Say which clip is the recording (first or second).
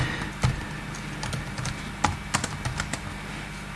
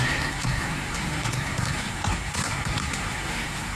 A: first